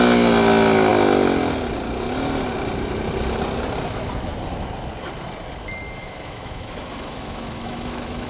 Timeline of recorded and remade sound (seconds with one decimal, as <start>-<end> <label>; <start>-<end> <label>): 0.0-6.0 recorded; 6.0-8.3 remade